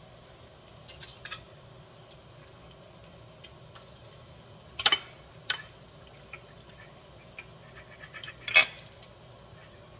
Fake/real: real